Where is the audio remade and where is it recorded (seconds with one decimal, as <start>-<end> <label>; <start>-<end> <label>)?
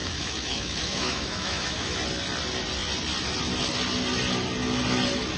0.0-2.0 remade; 2.0-5.4 recorded